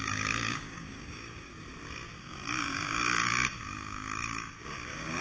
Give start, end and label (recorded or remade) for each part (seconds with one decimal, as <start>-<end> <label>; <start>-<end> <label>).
0.0-1.5 remade; 1.5-2.2 recorded; 2.2-5.2 remade

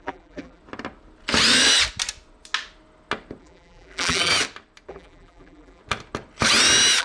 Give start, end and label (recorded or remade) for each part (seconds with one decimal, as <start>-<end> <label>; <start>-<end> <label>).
0.0-0.6 remade; 0.6-3.4 recorded; 3.4-4.3 remade; 4.3-4.9 recorded; 4.9-5.8 remade; 5.8-7.0 recorded

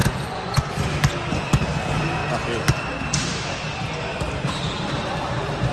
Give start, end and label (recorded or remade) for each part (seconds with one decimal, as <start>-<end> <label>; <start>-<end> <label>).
0.0-0.7 remade; 0.7-5.7 recorded

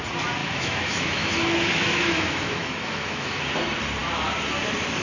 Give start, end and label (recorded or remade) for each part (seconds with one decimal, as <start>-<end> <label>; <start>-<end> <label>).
0.0-0.4 recorded; 0.4-3.4 remade; 3.4-5.0 recorded

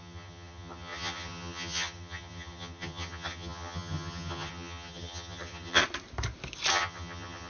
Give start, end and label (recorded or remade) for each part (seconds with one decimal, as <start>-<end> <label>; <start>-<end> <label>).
0.0-5.8 remade; 5.8-6.7 recorded; 6.7-7.5 remade